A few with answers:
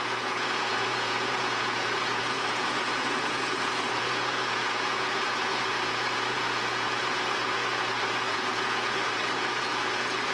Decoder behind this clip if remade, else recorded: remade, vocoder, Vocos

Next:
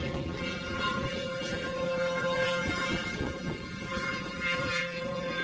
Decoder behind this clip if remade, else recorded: remade, vocoder, Vocos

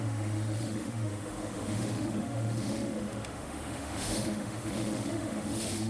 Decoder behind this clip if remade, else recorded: remade, autoencoder, DAC-VAE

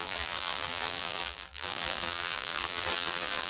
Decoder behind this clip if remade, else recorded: remade, vocoder, BigVGAN v2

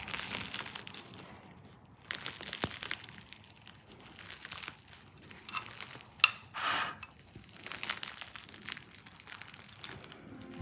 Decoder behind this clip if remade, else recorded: recorded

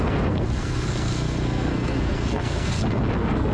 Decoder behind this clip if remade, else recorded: remade, codec, SNAC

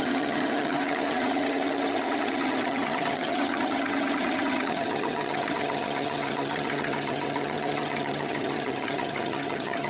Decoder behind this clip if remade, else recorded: remade, vocoder, HiFi-GAN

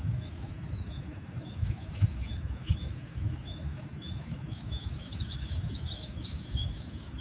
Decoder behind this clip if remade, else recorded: remade, autoencoder, DAC-VAE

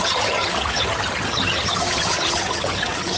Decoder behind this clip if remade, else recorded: remade, vocoder, HiFi-GAN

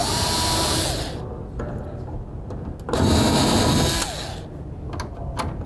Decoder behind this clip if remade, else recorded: recorded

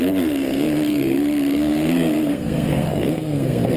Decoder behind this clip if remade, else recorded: remade, codec, SNAC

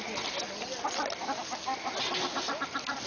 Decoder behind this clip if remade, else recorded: recorded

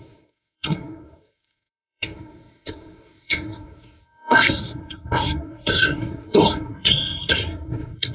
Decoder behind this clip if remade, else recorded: remade, codec, SNAC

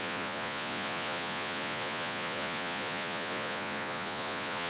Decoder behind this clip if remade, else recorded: remade, vocoder, Vocos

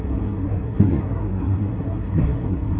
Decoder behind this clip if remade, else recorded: remade, codec, SNAC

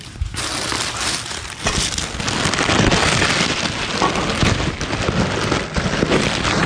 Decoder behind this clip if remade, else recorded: recorded